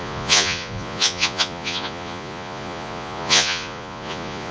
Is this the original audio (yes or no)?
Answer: no